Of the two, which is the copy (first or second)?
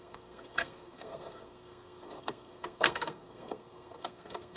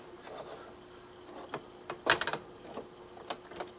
first